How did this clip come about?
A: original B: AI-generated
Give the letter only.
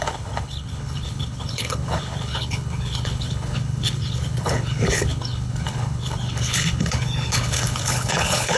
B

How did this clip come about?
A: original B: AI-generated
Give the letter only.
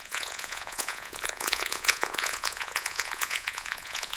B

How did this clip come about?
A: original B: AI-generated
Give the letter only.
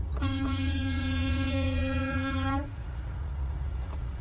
B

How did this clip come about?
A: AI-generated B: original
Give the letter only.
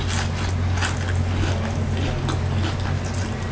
B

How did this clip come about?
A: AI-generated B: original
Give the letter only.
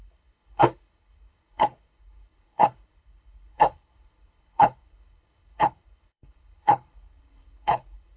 A